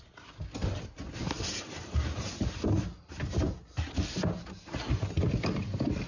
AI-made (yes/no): no